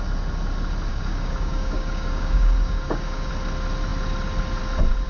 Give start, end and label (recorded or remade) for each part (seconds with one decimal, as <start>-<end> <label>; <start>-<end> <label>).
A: 0.0-0.9 recorded; 0.9-3.3 remade; 3.3-5.1 recorded